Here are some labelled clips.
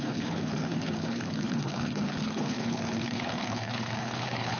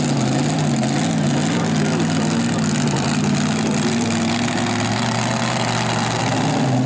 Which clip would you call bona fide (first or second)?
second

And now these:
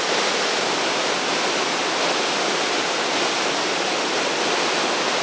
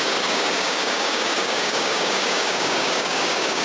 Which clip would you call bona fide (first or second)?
first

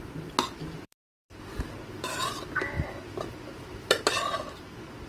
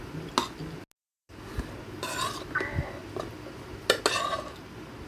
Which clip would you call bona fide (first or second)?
second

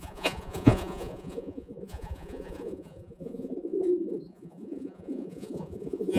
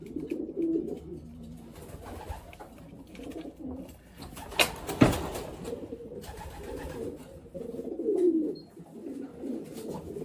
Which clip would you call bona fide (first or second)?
second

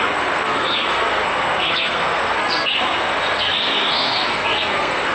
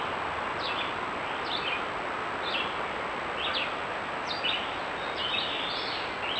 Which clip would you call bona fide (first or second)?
second